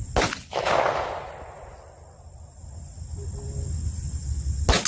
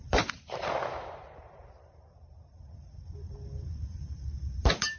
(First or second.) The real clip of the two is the first